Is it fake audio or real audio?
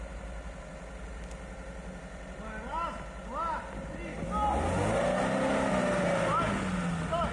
real